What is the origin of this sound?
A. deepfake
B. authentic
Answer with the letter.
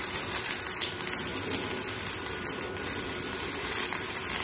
A